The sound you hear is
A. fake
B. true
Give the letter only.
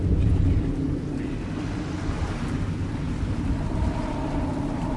B